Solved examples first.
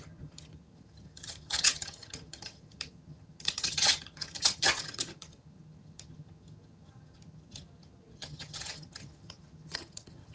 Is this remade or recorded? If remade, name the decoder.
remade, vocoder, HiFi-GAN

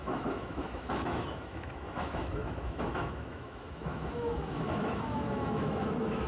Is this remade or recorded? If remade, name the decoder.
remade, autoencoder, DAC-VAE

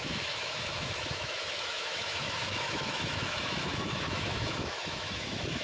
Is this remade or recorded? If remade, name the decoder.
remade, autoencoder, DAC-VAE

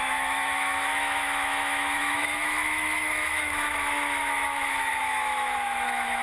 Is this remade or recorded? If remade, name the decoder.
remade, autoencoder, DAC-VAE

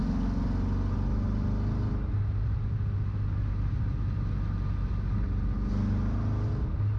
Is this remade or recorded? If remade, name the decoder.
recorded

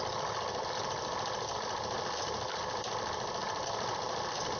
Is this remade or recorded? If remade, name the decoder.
recorded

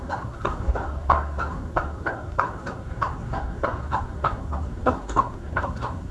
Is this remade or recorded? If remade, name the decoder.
remade, codec, SNAC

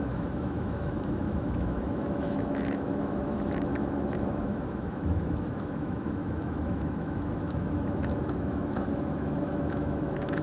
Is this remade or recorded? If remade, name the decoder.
remade, autoencoder, DAC-VAE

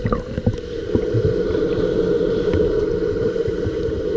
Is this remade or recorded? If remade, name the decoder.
recorded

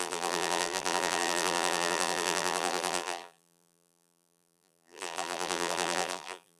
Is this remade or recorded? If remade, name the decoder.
remade, vocoder, BigVGAN v2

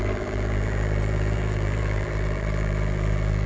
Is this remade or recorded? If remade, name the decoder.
remade, vocoder, BigVGAN v2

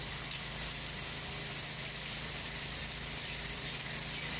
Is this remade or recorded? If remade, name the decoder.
remade, vocoder, BigVGAN v2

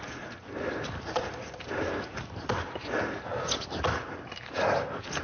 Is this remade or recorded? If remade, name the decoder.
recorded